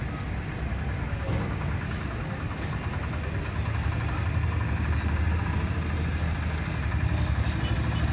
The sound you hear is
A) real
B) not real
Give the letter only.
A